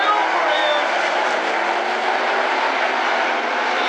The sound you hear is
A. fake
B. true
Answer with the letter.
B